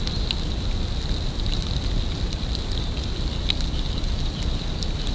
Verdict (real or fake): real